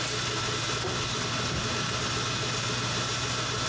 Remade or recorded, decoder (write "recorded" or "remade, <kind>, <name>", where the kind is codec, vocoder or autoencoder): recorded